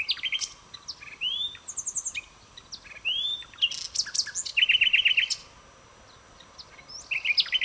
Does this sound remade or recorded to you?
recorded